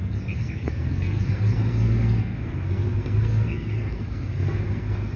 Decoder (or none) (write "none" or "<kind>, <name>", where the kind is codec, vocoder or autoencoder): codec, SNAC